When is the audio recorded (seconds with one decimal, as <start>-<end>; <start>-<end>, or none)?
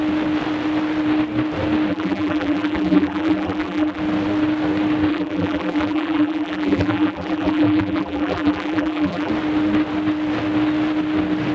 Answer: 0.0-1.9; 4.0-5.1; 9.3-11.5